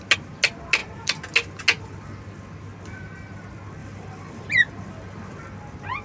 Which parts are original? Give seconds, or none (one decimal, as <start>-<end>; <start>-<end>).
0.0-3.8; 5.4-6.0